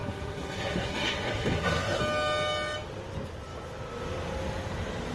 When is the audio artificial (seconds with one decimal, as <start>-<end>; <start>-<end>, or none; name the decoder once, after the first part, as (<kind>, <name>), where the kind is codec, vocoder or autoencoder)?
0.0-2.0 (codec, SNAC)